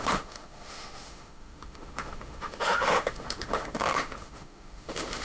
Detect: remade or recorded remade